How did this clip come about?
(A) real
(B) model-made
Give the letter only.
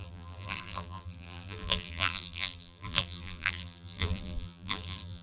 B